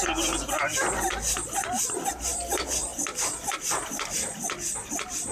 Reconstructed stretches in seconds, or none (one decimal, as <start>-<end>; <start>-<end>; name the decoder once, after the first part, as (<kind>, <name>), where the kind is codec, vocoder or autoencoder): none